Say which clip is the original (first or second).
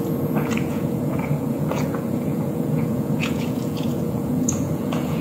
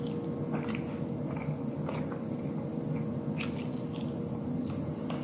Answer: second